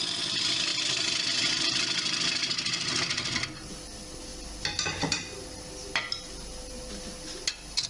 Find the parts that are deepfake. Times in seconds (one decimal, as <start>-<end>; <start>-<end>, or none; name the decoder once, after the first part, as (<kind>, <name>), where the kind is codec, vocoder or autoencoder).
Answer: none